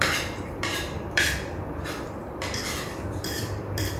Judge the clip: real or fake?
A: fake